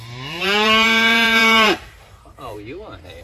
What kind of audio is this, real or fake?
fake